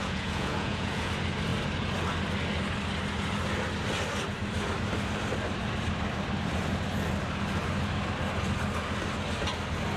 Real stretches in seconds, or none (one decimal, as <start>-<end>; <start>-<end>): 1.1-10.0